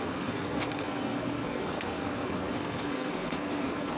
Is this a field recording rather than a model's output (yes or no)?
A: no